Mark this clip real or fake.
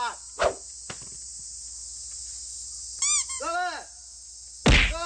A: real